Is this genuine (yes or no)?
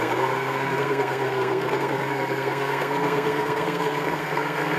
no